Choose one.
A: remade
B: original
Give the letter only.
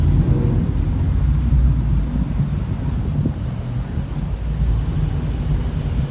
B